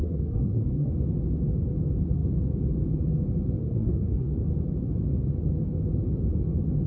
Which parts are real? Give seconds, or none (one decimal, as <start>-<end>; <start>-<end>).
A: 0.9-3.6; 4.3-6.9